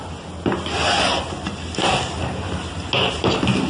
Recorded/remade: recorded